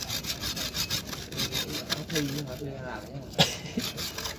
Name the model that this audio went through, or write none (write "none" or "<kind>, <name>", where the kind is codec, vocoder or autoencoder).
none